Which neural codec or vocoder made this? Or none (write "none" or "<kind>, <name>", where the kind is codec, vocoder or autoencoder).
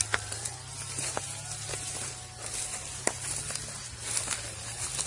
none